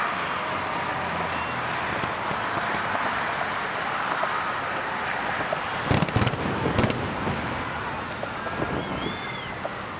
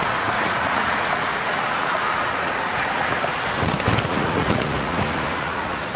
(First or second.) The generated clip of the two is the second